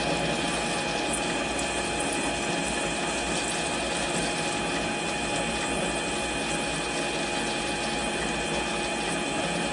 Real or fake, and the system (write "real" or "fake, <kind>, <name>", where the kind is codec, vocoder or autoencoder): real